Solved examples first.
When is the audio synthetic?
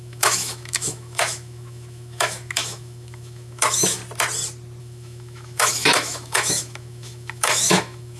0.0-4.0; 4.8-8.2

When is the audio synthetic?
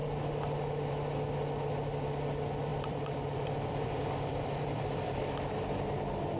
2.7-5.2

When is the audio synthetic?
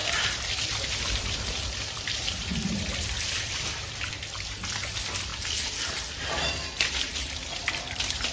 0.0-5.3; 7.8-8.3